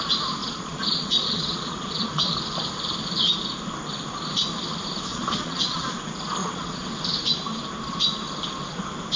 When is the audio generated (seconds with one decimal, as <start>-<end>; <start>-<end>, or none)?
0.4-2.1; 5.1-5.9; 6.4-6.9

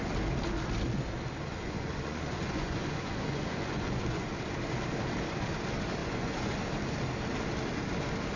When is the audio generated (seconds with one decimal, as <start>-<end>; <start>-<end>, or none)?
1.6-4.3; 6.0-6.6

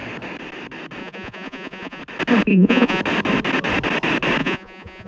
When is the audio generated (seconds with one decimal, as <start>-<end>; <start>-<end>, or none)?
1.0-2.0; 2.5-3.0; 4.4-5.1